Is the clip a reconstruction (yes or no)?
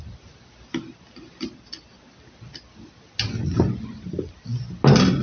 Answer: no